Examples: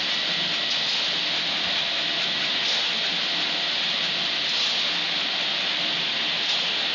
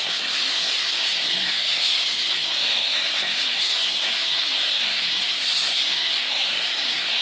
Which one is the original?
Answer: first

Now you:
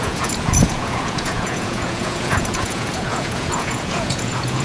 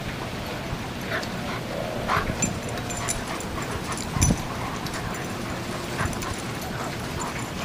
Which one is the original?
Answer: second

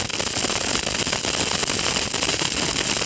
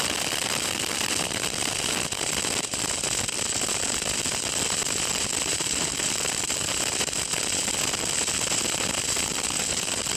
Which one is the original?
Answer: first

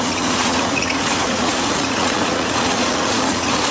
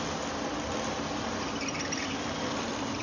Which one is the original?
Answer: second